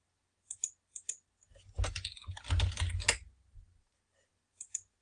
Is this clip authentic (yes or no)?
yes